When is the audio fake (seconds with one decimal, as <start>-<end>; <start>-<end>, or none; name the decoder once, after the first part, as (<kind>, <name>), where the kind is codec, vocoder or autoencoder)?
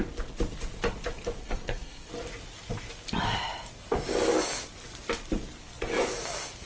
1.4-2.1 (codec, SNAC)